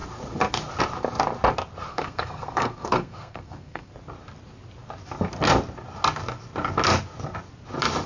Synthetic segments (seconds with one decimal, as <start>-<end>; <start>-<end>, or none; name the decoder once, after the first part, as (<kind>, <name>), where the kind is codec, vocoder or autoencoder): 1.9-3.9 (codec, SNAC)